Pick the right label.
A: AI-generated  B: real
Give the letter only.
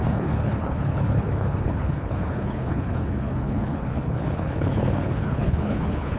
A